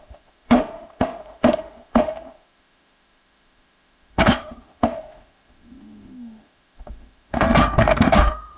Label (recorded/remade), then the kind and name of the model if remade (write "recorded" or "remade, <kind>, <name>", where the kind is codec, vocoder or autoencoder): remade, autoencoder, DAC-VAE